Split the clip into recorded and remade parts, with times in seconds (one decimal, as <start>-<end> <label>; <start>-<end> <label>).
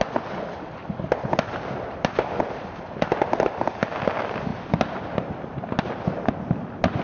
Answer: 0.0-7.0 recorded